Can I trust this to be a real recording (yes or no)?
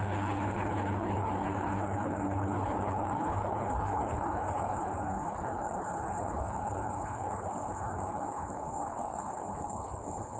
no